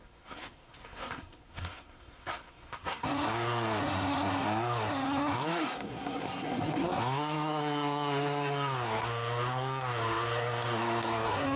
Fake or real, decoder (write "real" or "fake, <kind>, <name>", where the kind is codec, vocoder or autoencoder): fake, codec, SNAC